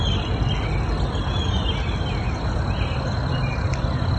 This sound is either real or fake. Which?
real